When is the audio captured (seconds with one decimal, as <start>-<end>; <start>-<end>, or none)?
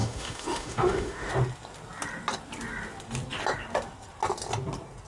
1.3-5.1